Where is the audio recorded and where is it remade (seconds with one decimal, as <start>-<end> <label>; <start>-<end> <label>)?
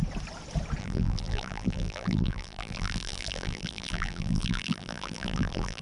0.0-0.8 recorded; 0.8-5.8 remade